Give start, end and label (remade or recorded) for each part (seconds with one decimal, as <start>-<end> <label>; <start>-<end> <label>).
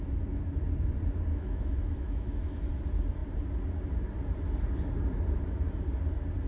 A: 0.0-1.3 recorded; 1.3-2.7 remade; 2.7-6.5 recorded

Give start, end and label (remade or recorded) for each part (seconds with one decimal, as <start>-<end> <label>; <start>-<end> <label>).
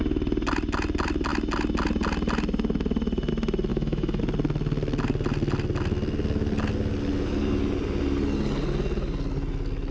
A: 0.0-3.7 recorded; 3.7-4.2 remade; 4.2-9.9 recorded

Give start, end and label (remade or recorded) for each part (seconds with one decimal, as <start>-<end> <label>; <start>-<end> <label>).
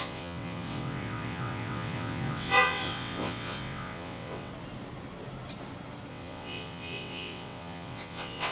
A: 0.0-4.5 remade; 4.5-6.1 recorded; 6.1-8.5 remade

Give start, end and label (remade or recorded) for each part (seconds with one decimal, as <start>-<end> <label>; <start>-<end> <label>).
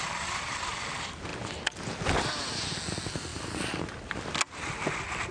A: 0.0-5.3 recorded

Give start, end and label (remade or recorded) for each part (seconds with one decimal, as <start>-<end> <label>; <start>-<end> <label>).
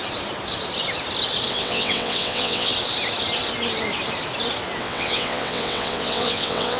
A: 0.0-1.5 recorded; 1.5-2.7 remade; 2.7-4.8 recorded; 4.8-6.8 remade